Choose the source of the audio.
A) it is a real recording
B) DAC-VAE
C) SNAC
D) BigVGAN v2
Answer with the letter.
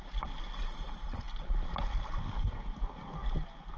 A